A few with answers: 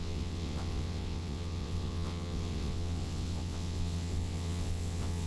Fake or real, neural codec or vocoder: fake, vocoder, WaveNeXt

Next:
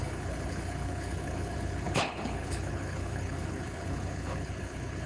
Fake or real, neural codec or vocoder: fake, codec, HILCodec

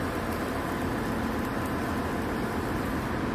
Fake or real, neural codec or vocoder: real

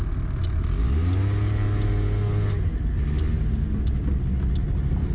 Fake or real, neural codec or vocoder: real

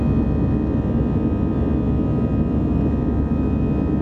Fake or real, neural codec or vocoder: real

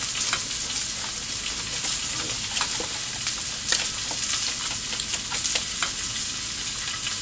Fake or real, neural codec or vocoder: real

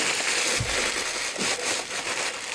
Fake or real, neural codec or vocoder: real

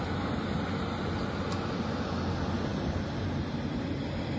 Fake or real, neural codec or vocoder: real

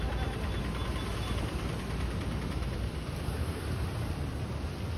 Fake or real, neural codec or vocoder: real